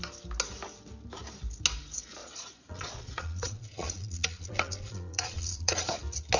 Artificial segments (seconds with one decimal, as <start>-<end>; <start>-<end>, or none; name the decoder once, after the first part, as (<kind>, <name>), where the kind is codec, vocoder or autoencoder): 2.2-6.0 (vocoder, Vocos)